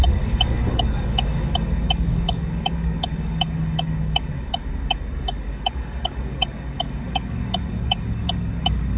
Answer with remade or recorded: remade